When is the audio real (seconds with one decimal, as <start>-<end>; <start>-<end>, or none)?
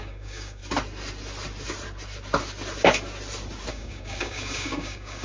0.6-3.7